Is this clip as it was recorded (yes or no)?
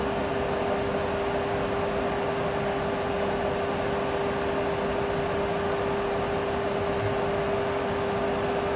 yes